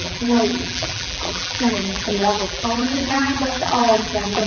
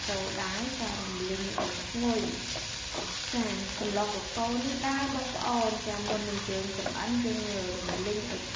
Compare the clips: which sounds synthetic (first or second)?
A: first